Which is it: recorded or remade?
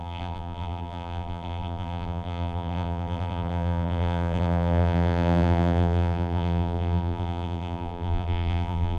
remade